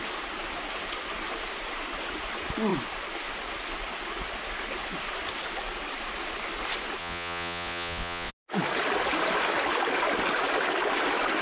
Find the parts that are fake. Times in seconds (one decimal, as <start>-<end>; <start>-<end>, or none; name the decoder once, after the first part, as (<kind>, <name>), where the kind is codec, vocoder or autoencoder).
7.0-8.3 (vocoder, Vocos)